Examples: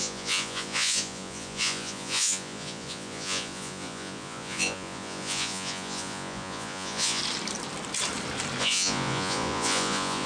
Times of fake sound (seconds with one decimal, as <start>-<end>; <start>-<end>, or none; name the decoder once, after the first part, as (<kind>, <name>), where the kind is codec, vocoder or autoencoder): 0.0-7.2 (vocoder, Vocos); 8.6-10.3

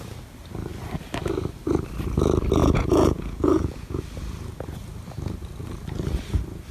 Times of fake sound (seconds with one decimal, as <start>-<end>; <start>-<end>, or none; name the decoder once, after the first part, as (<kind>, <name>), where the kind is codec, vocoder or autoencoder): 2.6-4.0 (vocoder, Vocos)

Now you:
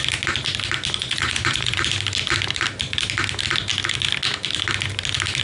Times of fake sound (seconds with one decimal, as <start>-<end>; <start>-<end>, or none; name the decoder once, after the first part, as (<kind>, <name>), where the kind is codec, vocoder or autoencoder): 1.0-1.8 (vocoder, Vocos)

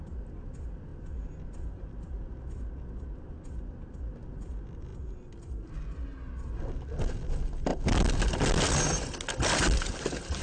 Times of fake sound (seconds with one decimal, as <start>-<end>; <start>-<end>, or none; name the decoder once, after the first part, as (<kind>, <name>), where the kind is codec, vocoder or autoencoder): none

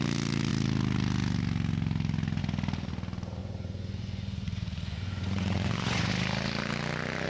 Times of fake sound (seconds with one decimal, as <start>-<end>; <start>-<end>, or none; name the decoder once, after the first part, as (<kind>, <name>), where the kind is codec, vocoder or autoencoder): 3.4-6.1 (vocoder, Vocos)

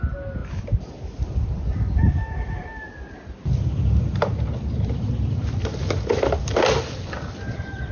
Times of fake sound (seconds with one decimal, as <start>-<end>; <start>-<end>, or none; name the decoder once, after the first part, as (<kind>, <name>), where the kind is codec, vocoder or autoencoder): none

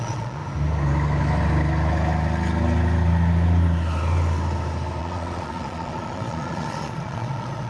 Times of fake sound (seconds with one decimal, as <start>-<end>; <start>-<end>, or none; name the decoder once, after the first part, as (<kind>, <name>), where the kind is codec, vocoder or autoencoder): 0.0-0.4 (vocoder, Vocos); 5.0-7.7